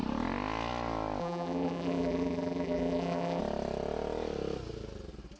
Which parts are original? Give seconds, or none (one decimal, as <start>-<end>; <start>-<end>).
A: 0.0-1.2; 3.4-5.4

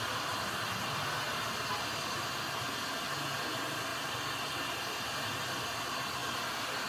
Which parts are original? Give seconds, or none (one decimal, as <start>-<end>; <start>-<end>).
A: 0.0-6.9

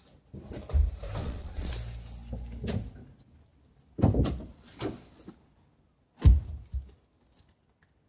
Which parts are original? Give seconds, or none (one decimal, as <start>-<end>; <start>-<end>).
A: 0.0-1.2; 1.7-8.1

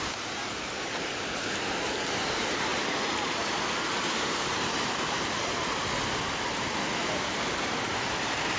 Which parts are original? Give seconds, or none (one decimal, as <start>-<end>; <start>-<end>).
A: 2.7-4.1; 5.8-7.0

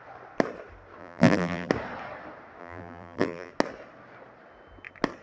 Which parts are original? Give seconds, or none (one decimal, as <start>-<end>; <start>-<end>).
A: 0.0-1.0; 1.7-2.6; 3.5-5.2